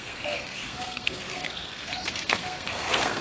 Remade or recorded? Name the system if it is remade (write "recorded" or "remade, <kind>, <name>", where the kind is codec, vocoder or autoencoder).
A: remade, codec, SNAC